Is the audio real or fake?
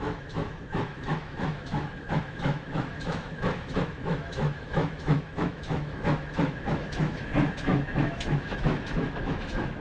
fake